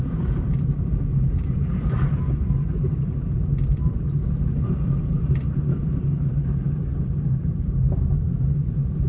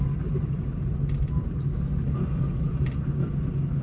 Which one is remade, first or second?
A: first